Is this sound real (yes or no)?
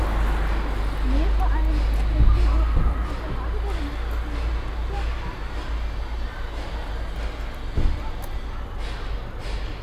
yes